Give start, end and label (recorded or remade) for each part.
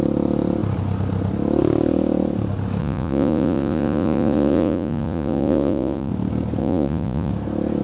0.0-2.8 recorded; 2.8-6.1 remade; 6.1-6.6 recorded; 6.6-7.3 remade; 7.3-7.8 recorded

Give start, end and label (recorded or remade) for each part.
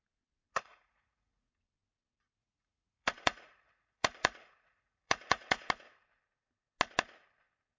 0.0-0.5 recorded; 0.5-1.5 remade; 1.5-2.4 recorded; 2.4-5.7 remade; 5.7-7.8 recorded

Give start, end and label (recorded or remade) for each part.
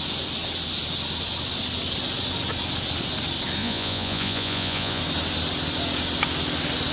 0.0-3.6 recorded; 3.6-5.0 remade; 5.0-6.9 recorded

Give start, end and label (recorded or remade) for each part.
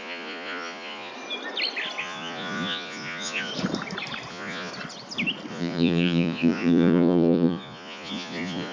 0.0-1.1 remade; 1.1-2.0 recorded; 2.0-3.5 remade; 3.5-4.3 recorded; 4.3-4.7 remade; 4.7-5.5 recorded; 5.5-8.7 remade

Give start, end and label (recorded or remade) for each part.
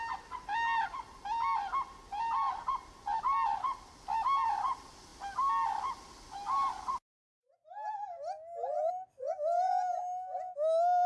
0.0-11.1 recorded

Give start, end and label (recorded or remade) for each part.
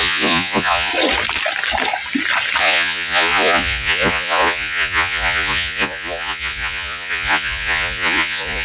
0.0-0.9 remade; 0.9-2.6 recorded; 2.6-8.6 remade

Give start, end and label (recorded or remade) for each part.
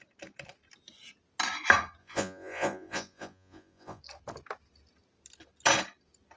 0.0-2.0 recorded; 2.0-4.0 remade; 4.0-6.4 recorded